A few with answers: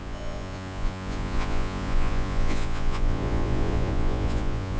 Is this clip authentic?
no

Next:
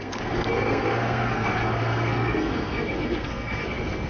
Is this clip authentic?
no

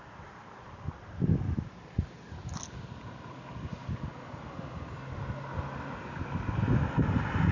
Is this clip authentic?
yes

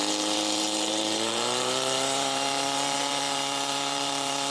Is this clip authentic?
no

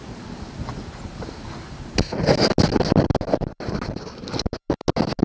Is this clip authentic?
yes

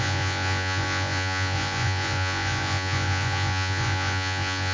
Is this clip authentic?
no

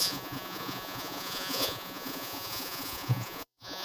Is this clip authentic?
no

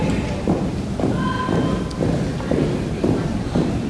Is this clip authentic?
yes